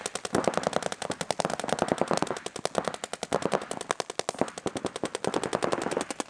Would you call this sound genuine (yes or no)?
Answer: yes